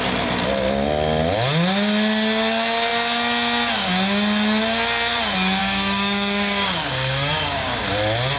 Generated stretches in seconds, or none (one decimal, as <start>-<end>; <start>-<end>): 5.6-7.8

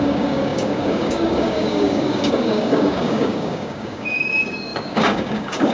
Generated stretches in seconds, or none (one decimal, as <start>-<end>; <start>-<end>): 0.0-5.7

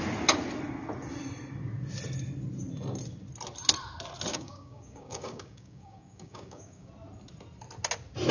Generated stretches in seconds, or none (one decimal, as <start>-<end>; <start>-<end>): 4.3-6.9